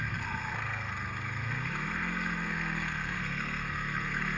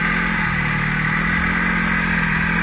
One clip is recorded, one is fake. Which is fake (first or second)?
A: first